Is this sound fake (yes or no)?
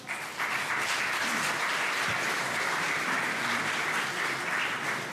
no